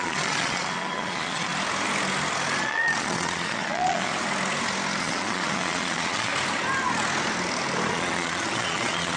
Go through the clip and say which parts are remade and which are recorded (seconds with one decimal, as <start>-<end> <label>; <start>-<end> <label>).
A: 0.0-1.5 remade; 1.5-2.6 recorded; 2.6-4.1 remade; 4.1-5.0 recorded; 5.0-6.3 remade; 6.3-7.9 recorded; 7.9-9.2 remade